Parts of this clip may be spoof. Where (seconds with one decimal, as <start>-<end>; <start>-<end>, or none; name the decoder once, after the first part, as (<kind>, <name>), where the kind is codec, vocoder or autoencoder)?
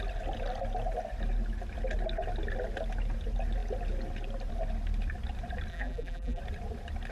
5.7-6.4 (vocoder, BigVGAN v2)